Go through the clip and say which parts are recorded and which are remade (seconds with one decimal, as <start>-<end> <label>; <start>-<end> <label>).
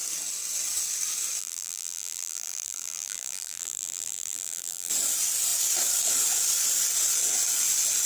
0.0-1.4 recorded; 1.4-4.9 remade; 4.9-8.1 recorded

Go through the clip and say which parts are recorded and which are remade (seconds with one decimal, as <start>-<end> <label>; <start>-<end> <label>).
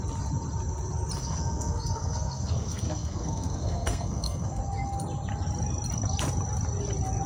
0.0-1.2 recorded; 1.2-4.6 remade; 4.6-7.3 recorded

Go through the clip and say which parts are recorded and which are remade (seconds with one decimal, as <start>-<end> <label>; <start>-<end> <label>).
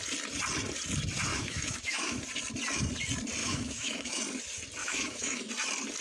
0.0-1.3 recorded; 1.3-2.2 remade; 2.2-3.4 recorded; 3.4-4.2 remade; 4.2-4.8 recorded; 4.8-5.5 remade; 5.5-6.0 recorded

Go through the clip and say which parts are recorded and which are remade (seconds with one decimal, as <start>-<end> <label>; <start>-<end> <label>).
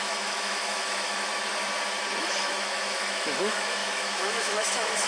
0.0-1.3 remade; 1.3-2.2 recorded; 2.2-5.1 remade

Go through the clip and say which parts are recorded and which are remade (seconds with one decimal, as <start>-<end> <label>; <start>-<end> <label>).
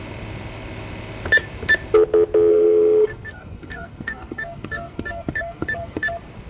0.0-2.5 recorded; 2.5-6.1 remade; 6.1-6.5 recorded